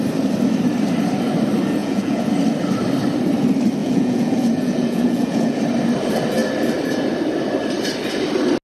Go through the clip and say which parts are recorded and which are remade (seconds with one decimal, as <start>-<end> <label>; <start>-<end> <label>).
0.0-1.8 recorded; 1.8-2.3 remade; 2.3-3.8 recorded; 3.8-5.6 remade; 5.6-8.6 recorded